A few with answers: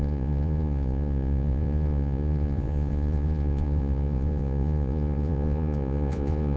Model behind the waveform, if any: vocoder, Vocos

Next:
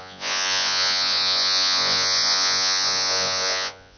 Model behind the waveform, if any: vocoder, Vocos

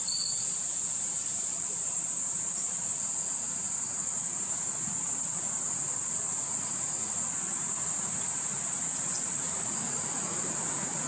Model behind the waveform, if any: vocoder, Vocos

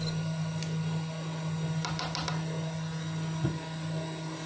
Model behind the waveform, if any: none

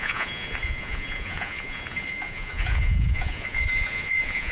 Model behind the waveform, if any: vocoder, Vocos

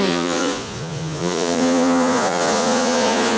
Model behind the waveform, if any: vocoder, Vocos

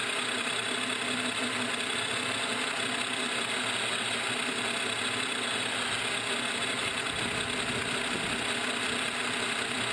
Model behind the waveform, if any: none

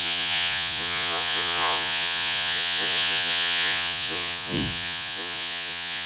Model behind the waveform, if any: vocoder, Vocos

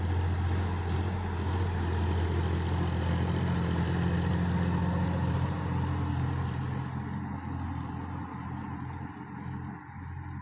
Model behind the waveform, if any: none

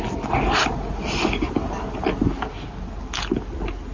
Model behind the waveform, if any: none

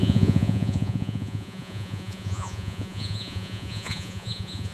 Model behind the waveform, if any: vocoder, Vocos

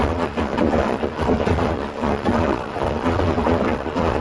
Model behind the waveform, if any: vocoder, Vocos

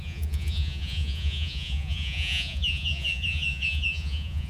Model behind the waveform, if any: vocoder, Vocos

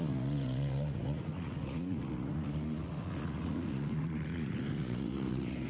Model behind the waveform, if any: vocoder, Vocos